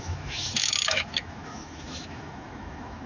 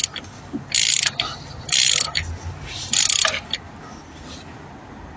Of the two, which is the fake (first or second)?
first